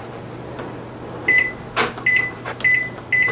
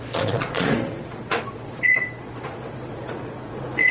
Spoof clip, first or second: second